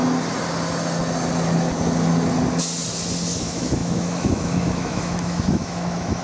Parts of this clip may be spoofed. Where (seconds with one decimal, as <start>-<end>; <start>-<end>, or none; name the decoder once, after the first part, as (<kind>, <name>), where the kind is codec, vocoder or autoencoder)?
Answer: 3.4-6.2 (autoencoder, DAC-VAE)